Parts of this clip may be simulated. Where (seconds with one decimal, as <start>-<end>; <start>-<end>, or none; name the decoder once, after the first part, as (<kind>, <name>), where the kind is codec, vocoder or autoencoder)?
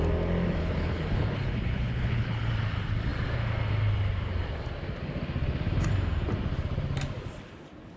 0.6-2.5 (codec, HILCodec)